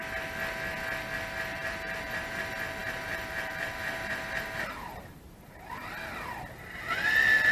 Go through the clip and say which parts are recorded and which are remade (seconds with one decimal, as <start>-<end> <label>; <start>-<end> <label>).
0.0-1.5 recorded; 1.5-2.4 remade; 2.4-2.8 recorded; 2.8-5.9 remade; 5.9-7.5 recorded